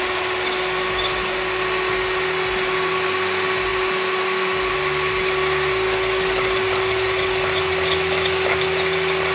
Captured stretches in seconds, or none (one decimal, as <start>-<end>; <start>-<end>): 0.0-9.3